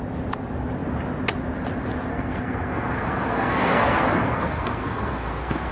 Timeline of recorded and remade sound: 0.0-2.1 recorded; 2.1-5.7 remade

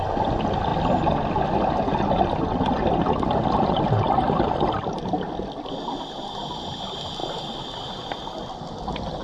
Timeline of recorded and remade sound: 0.0-9.2 recorded

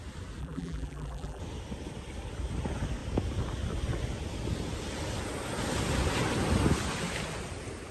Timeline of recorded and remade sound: 0.0-0.4 recorded; 0.4-1.4 remade; 1.4-7.9 recorded

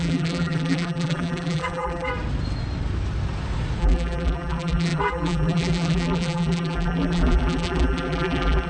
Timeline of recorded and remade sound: 0.0-2.1 remade; 2.1-3.8 recorded; 3.8-8.7 remade

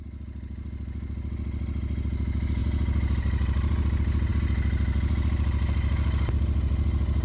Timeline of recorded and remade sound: 0.0-7.2 recorded

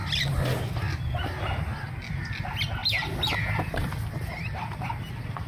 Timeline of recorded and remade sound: 0.0-2.8 recorded; 2.8-5.0 remade; 5.0-5.5 recorded

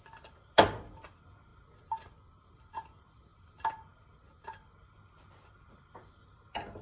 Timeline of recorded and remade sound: 0.0-6.8 recorded

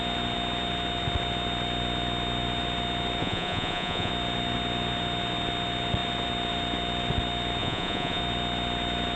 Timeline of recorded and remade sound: 0.0-3.2 recorded; 3.2-4.1 remade; 4.1-7.6 recorded; 7.6-8.2 remade; 8.2-9.2 recorded